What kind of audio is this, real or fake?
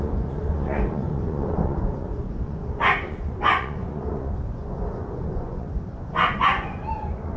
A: fake